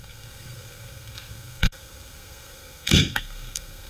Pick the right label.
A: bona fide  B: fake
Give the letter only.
B